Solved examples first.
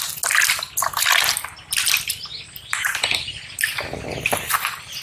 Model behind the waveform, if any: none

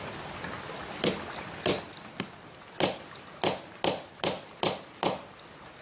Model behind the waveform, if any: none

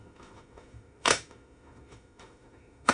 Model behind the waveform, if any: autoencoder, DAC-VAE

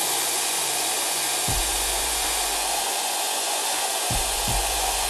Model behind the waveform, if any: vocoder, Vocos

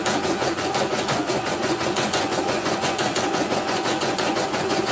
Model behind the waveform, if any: vocoder, Vocos